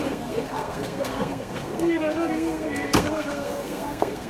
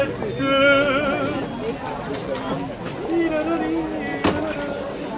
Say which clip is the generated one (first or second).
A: first